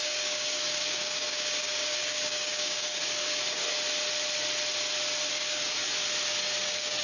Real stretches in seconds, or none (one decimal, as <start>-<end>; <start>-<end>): 3.6-5.3; 5.8-6.6